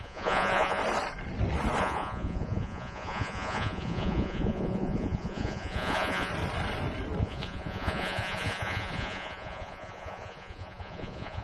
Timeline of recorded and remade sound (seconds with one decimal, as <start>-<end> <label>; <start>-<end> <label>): 0.0-0.8 remade; 0.8-1.8 recorded; 1.8-6.3 remade; 6.3-7.2 recorded; 7.2-11.4 remade